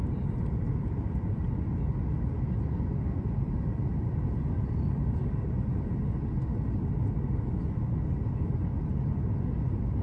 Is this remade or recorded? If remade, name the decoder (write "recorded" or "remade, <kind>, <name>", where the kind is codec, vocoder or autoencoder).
recorded